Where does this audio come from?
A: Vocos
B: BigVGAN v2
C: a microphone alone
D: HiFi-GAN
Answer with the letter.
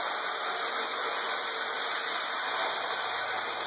C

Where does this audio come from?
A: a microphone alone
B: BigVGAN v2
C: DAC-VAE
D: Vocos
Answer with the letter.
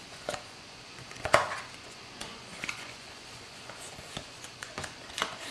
D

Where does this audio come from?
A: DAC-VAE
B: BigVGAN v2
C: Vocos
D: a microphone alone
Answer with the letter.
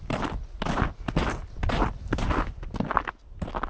D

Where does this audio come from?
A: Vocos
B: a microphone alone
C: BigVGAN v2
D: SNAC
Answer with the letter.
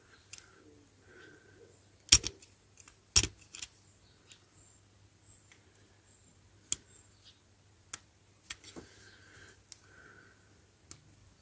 B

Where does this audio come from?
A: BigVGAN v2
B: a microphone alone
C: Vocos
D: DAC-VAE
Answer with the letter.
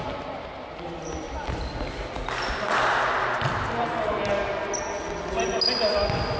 B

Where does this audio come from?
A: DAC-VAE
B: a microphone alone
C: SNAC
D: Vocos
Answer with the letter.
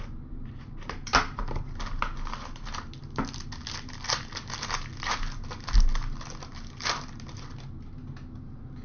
B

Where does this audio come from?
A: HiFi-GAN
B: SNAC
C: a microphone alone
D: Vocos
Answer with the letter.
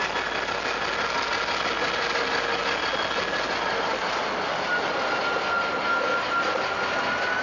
C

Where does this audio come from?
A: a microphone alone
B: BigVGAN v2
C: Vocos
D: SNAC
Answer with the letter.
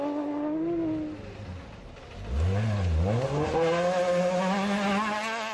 A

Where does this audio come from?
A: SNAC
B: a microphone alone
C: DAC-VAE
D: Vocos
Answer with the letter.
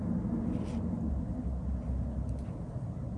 B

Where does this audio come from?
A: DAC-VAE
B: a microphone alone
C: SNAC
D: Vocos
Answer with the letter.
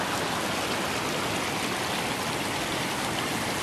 B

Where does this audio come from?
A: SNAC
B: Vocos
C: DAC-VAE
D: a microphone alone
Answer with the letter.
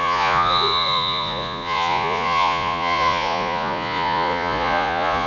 B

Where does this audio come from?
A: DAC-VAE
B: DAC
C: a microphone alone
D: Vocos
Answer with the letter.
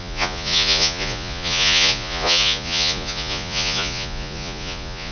D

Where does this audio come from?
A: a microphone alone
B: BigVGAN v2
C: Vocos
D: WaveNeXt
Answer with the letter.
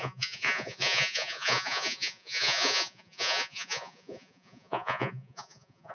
C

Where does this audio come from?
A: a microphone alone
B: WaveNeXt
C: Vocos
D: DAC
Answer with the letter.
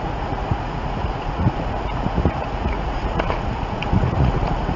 C